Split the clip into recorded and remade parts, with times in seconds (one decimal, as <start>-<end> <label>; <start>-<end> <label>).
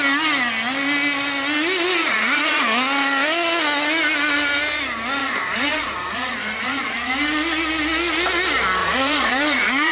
0.0-2.0 recorded; 2.0-2.6 remade; 2.6-5.2 recorded; 5.2-7.1 remade; 7.1-8.8 recorded; 8.8-9.9 remade